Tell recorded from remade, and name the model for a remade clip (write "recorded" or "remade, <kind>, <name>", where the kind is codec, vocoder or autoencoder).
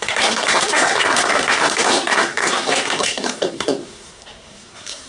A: remade, codec, SNAC